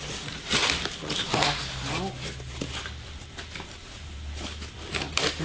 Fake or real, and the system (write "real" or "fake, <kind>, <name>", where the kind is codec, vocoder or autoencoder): real